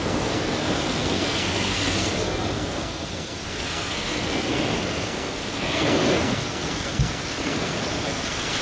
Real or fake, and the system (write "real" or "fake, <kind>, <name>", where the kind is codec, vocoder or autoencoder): fake, codec, SNAC